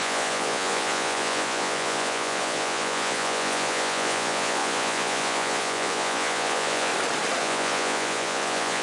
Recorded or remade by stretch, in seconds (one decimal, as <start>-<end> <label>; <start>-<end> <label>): 0.0-6.9 remade; 6.9-7.4 recorded; 7.4-8.8 remade

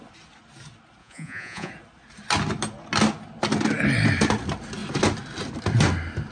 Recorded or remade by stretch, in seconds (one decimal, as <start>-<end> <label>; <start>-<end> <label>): 0.0-1.0 recorded; 1.0-1.7 remade; 1.7-6.3 recorded

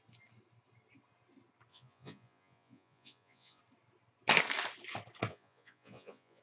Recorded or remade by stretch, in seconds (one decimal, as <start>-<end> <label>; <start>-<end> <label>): 0.0-1.7 recorded; 1.7-3.6 remade; 3.6-5.3 recorded; 5.3-6.4 remade

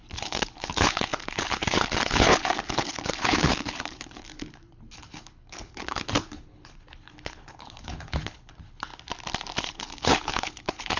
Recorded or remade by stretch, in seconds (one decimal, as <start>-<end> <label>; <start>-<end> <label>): 0.0-8.9 remade; 8.9-9.6 recorded; 9.6-11.0 remade

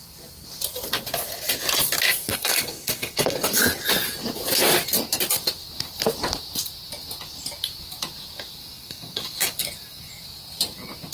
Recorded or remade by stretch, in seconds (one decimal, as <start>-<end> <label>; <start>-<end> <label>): 0.0-2.3 recorded; 2.3-3.6 remade; 3.6-8.6 recorded; 8.6-10.1 remade; 10.1-11.1 recorded